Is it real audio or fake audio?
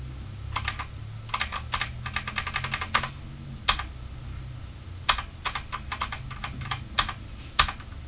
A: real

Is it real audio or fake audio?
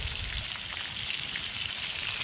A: real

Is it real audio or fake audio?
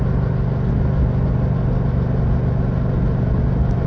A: real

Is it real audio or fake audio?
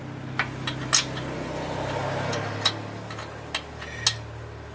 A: real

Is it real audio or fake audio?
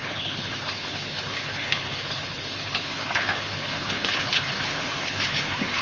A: fake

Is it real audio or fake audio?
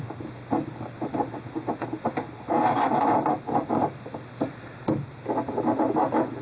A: real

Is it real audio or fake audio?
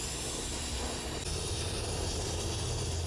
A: real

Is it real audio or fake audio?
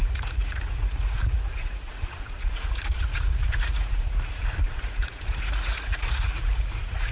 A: fake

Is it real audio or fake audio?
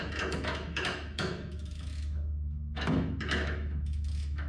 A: fake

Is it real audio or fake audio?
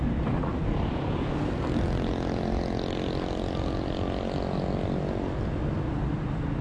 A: real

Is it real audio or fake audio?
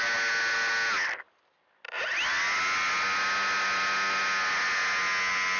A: real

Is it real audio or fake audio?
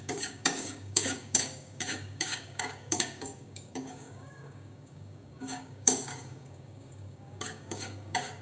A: fake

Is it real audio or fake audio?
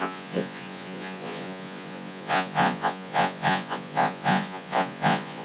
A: fake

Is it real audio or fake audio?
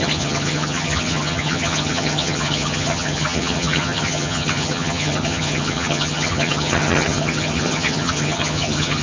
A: fake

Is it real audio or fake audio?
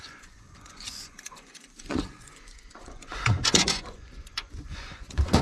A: fake